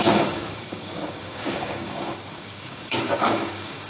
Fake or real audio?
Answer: fake